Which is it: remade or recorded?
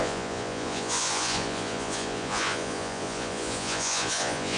remade